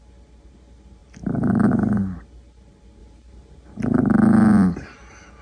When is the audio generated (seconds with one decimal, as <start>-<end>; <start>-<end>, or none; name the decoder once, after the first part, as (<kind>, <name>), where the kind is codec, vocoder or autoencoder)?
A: 1.0-1.7 (vocoder, BigVGAN v2); 3.0-4.0